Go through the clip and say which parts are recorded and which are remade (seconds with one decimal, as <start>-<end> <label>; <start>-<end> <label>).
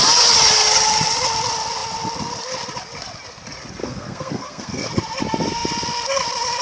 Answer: 0.0-3.8 recorded; 3.8-4.9 remade; 4.9-6.6 recorded